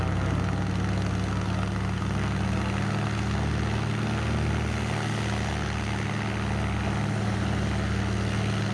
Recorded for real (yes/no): yes